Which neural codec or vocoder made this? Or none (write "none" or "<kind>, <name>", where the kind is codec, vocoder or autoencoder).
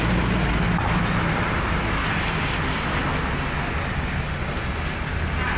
none